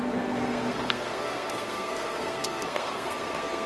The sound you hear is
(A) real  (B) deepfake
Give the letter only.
B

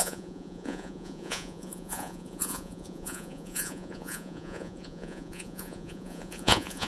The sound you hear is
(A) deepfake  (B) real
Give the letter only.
A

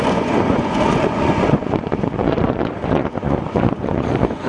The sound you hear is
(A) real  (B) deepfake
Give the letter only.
B